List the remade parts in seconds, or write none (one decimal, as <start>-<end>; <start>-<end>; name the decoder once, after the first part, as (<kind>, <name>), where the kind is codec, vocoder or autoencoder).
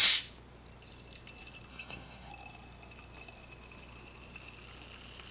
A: 1.7-2.3 (codec, SNAC)